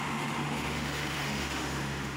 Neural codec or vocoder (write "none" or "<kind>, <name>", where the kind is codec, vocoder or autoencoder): autoencoder, DAC-VAE